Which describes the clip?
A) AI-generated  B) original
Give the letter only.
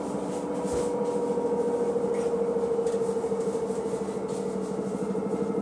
B